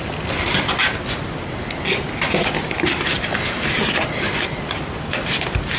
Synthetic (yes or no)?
no